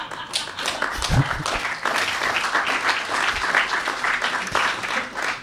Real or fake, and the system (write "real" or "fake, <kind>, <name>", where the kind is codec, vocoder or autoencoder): real